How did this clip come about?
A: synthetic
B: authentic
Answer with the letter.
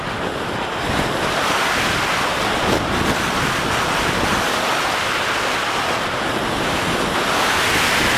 B